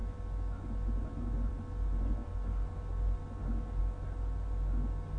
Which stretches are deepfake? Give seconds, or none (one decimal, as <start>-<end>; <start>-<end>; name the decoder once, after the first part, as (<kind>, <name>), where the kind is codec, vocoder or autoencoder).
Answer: none